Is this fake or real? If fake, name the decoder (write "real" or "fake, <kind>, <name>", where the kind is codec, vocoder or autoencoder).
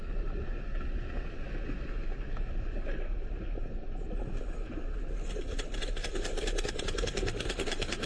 real